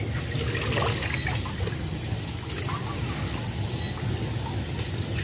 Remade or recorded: recorded